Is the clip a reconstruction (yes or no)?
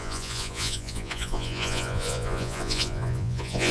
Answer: yes